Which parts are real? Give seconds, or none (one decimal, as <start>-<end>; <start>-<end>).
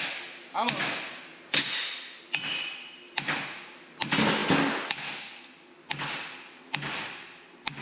0.0-7.8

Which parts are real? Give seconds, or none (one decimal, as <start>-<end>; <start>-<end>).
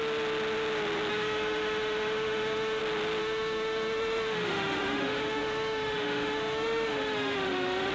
0.0-1.1; 2.8-3.2